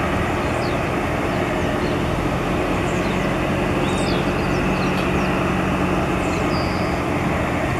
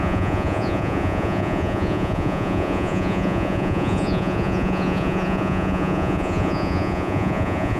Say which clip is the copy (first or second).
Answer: second